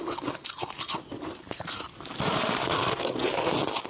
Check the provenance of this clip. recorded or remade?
recorded